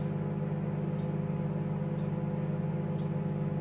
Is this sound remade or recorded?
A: recorded